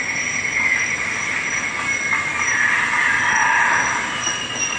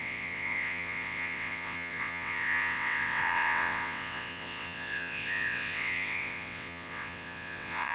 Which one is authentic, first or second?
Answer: first